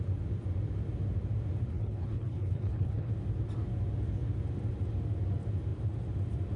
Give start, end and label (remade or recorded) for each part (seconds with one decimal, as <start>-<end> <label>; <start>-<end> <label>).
0.0-1.7 recorded; 1.7-3.1 remade; 3.1-6.6 recorded